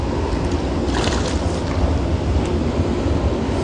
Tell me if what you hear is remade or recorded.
recorded